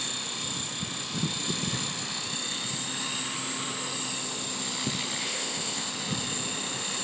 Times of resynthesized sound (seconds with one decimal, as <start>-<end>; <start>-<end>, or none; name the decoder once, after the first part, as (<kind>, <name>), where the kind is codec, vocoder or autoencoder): 5.2-5.9 (codec, ZipCodec)